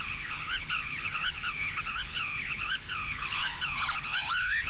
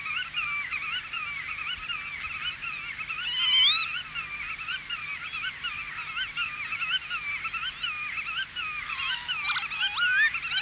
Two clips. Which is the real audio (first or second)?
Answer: second